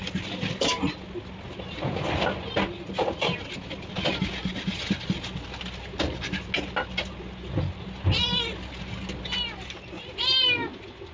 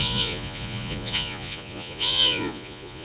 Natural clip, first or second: first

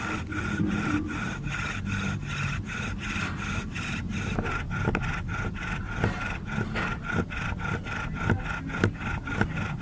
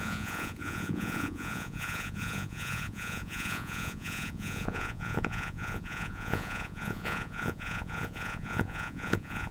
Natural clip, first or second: first